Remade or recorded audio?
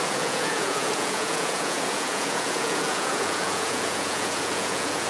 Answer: remade